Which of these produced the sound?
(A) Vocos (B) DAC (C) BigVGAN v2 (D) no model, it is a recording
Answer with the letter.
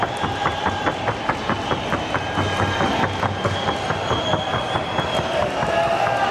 D